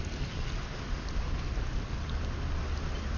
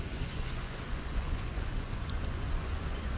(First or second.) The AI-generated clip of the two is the second